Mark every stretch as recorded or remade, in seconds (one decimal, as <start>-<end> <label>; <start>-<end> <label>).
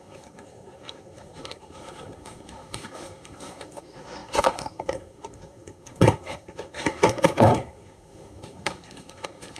0.0-9.6 remade